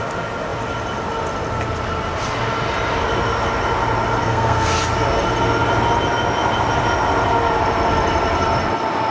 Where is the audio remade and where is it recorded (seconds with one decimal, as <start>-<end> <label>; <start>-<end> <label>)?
0.0-4.2 recorded; 4.2-4.7 remade; 4.7-9.1 recorded